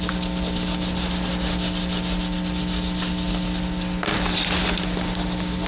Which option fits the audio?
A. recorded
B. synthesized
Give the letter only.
A